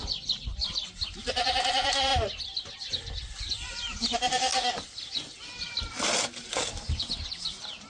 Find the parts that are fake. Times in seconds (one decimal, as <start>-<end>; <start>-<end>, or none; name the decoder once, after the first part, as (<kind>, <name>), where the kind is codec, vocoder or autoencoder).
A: 0.0-2.1 (vocoder, BigVGAN v2); 2.9-4.5; 6.5-7.9